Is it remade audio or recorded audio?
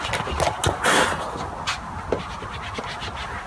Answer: recorded